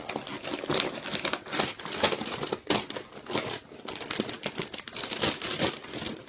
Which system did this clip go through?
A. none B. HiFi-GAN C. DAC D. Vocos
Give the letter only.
A